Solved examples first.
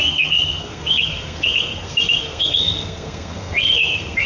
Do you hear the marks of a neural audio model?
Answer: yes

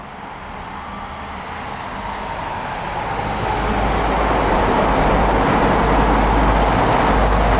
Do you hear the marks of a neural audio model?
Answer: no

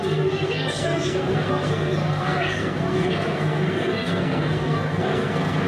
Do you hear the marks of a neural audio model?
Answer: yes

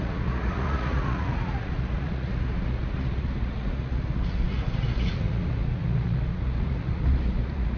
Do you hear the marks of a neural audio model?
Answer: yes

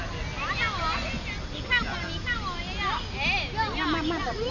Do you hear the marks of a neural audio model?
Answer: no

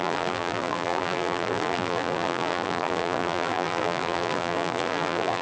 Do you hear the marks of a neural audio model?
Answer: yes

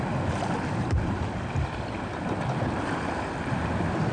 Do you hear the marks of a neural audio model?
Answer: no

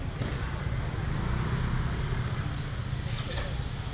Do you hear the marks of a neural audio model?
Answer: no